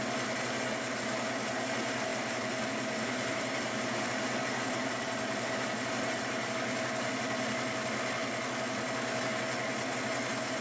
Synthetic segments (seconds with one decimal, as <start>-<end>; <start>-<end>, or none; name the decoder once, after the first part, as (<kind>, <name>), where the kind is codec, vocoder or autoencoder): 2.1-6.5 (vocoder, BigVGAN v2)

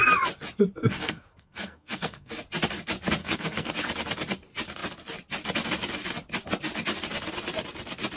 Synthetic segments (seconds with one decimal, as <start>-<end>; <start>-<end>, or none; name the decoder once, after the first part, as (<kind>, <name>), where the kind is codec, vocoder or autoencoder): 0.8-2.3 (codec, SNAC); 3.2-3.7

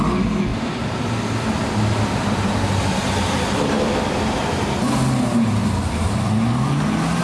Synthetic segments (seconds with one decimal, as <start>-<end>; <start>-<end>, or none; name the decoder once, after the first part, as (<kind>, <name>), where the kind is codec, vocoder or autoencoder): 0.5-4.7 (vocoder, BigVGAN v2); 5.6-6.2

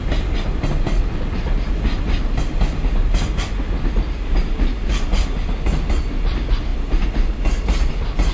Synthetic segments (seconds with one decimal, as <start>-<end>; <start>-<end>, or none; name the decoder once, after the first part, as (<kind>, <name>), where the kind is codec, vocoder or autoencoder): none

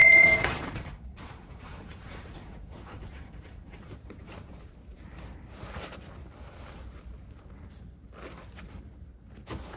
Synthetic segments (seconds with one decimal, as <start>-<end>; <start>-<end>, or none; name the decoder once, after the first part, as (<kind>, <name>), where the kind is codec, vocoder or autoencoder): 0.0-4.6 (vocoder, Vocos)